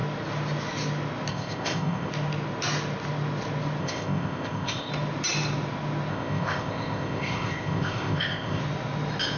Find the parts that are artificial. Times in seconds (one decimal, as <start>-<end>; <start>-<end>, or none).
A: 1.3-2.1; 3.8-4.9; 6.1-8.6